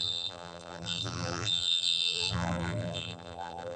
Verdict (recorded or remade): remade